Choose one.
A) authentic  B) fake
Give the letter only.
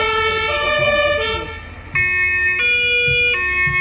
A